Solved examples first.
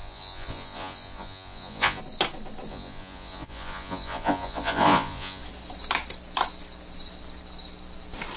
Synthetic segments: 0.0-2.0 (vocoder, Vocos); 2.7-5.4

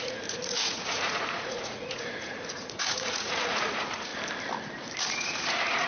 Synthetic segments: 0.0-4.1 (vocoder, Vocos); 5.1-5.9

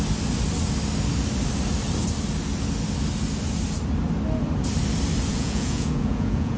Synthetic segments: 5.3-6.6 (vocoder, Vocos)